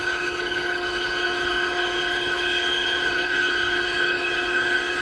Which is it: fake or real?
fake